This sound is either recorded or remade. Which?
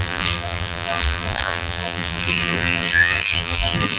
remade